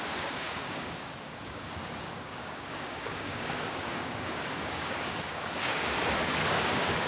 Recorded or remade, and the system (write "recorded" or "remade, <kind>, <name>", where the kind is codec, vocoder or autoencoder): remade, codec, DAC